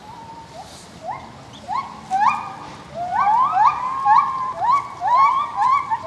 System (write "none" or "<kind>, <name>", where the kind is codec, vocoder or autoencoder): none